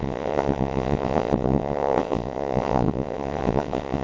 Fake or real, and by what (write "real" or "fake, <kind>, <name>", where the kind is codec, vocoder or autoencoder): fake, vocoder, WaveNeXt